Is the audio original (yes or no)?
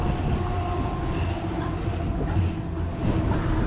yes